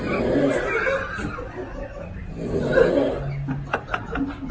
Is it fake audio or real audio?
real